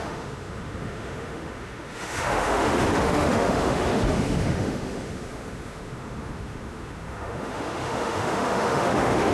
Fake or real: fake